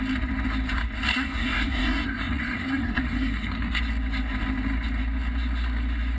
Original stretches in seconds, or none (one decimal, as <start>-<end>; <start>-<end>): 0.0-1.1; 3.8-6.2